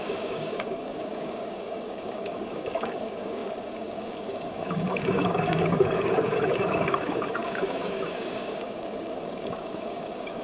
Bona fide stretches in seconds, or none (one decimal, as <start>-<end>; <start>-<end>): none